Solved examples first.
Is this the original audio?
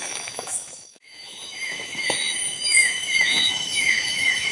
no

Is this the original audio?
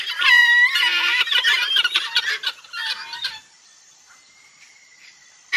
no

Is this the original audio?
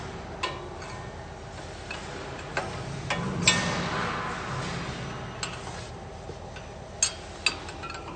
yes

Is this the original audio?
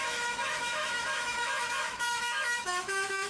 no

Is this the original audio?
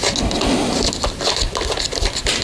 yes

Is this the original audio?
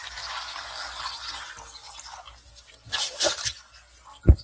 yes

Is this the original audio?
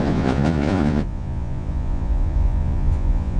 no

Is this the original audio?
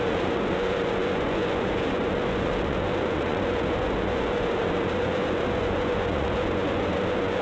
no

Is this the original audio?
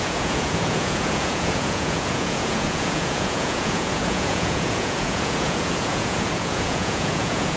no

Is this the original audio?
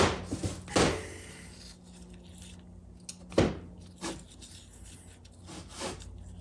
yes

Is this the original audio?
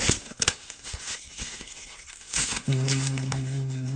no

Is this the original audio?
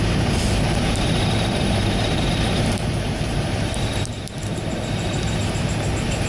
no